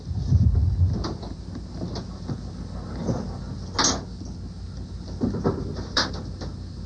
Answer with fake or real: real